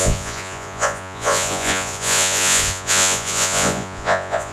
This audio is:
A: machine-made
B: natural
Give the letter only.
A